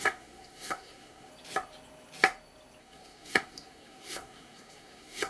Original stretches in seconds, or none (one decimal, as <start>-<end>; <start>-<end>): 1.3-2.8